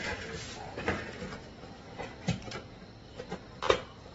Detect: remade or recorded recorded